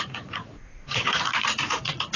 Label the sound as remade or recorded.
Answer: remade